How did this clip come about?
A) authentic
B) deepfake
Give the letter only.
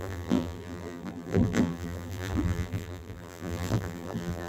B